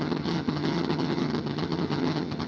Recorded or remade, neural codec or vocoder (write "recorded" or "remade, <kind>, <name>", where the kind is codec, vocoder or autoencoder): remade, vocoder, HiFi-GAN